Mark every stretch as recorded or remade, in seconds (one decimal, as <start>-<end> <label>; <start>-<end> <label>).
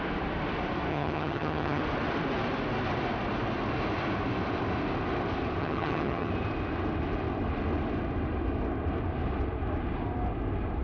0.0-0.9 recorded; 0.9-1.8 remade; 1.8-5.6 recorded; 5.6-6.3 remade; 6.3-10.8 recorded